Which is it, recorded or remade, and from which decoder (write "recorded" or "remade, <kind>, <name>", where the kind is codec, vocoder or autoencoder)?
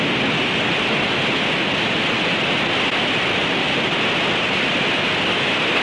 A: recorded